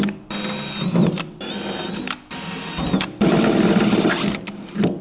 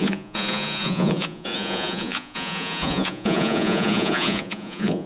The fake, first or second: second